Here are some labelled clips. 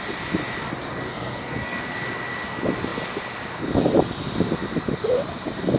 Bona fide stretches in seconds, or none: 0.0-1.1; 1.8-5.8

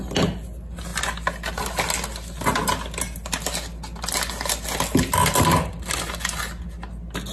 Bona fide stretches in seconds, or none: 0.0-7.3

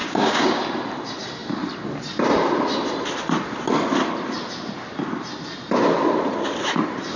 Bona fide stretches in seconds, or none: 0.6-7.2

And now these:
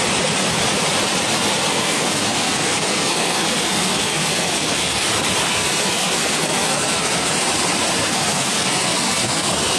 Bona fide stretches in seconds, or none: 0.0-1.7; 5.1-5.5; 7.3-8.0

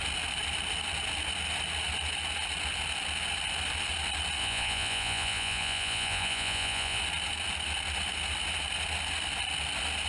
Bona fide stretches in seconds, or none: 0.0-4.4; 7.0-10.1

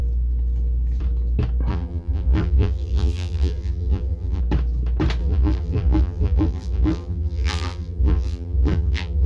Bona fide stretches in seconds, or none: 0.0-1.7; 4.4-5.2